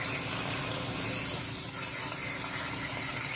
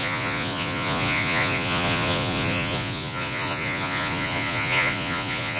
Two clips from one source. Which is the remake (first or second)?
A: second